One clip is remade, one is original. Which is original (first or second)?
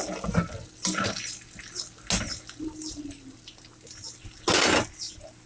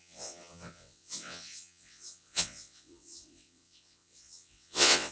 first